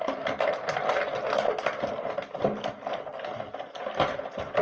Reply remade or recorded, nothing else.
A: recorded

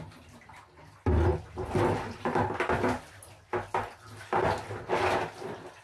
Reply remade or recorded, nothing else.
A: recorded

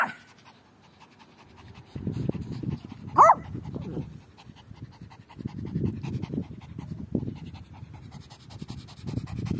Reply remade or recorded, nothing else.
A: recorded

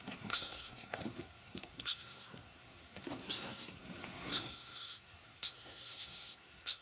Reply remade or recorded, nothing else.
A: remade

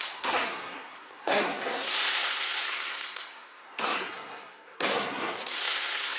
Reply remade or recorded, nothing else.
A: remade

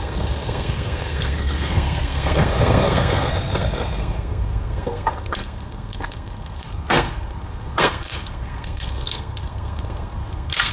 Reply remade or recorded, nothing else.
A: remade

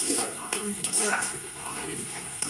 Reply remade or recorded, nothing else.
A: remade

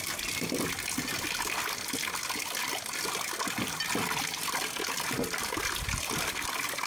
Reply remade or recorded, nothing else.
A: recorded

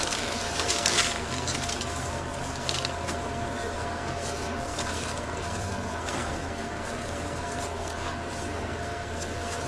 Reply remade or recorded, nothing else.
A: remade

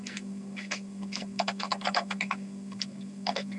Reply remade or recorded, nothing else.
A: remade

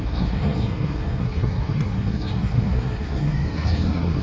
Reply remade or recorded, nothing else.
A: remade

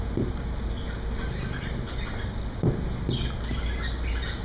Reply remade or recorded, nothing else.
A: recorded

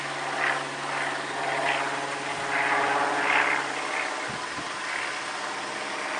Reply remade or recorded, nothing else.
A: recorded